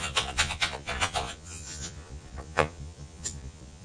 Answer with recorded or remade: remade